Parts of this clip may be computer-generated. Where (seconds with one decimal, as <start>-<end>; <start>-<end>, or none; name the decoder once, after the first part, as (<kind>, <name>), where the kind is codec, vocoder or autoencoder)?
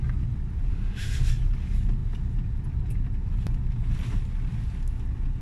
0.7-1.3 (autoencoder, DAC-VAE)